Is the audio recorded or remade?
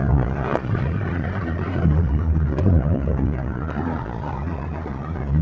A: remade